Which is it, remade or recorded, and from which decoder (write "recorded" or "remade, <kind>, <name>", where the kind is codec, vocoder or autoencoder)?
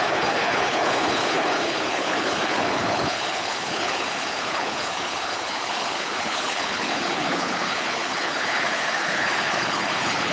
remade, codec, HILCodec